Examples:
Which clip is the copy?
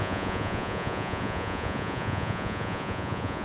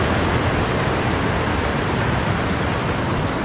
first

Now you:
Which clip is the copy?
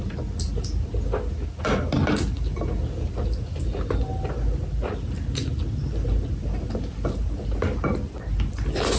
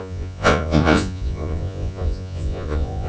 second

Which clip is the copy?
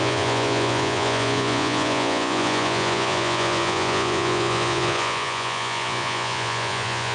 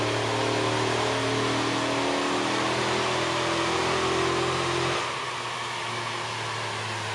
first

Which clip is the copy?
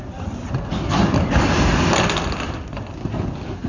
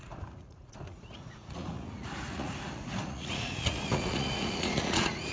second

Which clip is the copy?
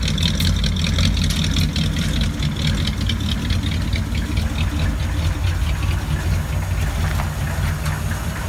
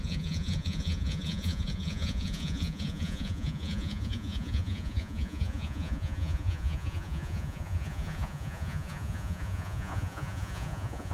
second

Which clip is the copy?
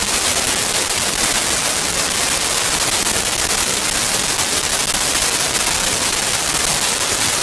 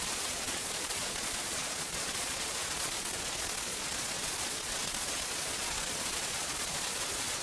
second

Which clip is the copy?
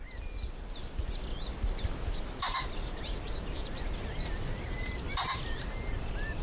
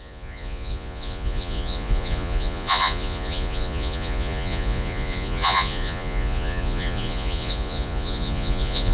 second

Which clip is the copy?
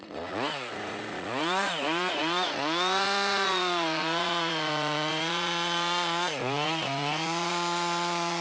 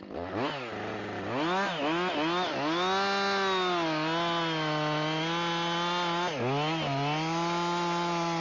first